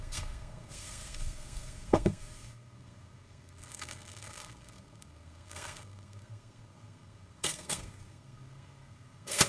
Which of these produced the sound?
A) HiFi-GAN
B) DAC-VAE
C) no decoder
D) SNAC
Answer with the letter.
D